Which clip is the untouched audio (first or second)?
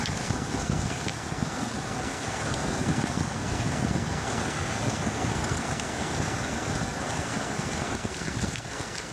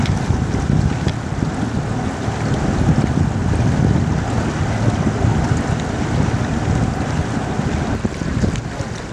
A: second